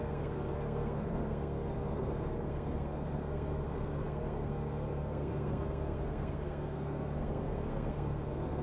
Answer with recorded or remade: remade